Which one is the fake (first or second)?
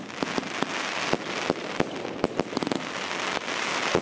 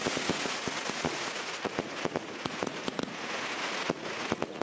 second